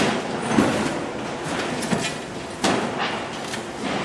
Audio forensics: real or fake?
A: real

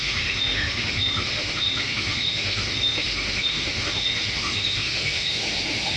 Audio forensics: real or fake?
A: fake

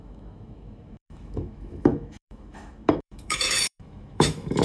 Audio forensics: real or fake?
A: fake